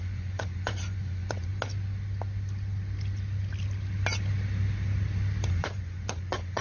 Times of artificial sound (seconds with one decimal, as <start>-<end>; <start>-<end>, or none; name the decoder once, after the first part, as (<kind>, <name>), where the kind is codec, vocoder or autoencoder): 0.0-1.5 (vocoder, Vocos); 5.5-6.6